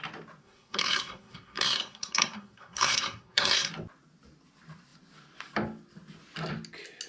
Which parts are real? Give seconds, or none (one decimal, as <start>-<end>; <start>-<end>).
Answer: 0.0-0.4; 3.7-7.1